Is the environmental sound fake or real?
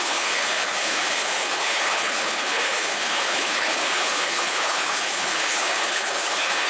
fake